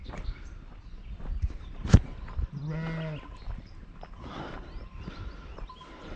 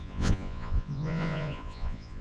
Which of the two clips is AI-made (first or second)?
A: second